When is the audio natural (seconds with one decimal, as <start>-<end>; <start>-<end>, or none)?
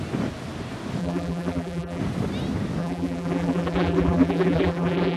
0.0-1.0; 2.0-2.8